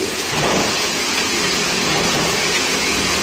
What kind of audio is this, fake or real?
fake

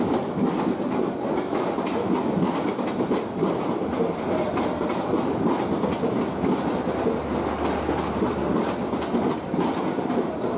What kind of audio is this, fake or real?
real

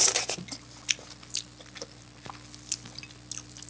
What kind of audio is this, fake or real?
real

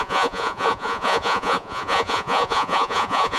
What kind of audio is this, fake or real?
fake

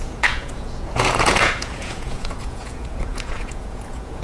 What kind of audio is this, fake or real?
fake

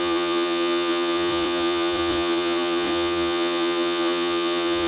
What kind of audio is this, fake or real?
fake